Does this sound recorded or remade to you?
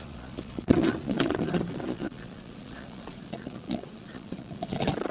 remade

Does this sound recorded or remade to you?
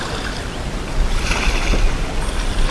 recorded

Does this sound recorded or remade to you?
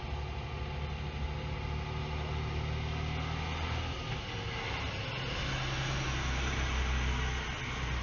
recorded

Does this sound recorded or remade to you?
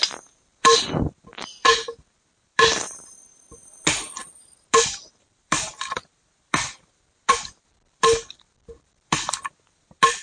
recorded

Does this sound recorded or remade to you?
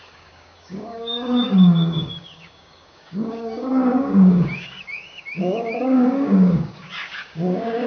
remade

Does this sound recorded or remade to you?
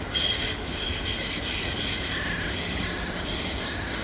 recorded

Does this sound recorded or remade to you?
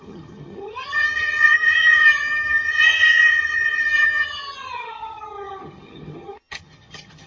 remade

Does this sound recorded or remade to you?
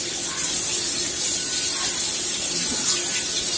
recorded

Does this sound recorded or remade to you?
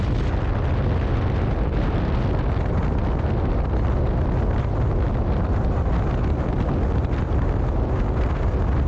recorded